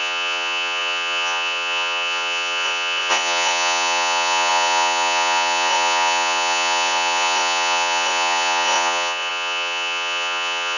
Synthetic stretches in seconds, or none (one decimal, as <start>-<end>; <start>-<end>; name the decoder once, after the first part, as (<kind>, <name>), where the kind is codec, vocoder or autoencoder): 0.0-10.8 (vocoder, Vocos)